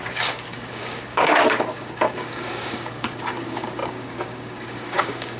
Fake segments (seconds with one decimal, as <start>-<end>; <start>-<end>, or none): 0.0-5.4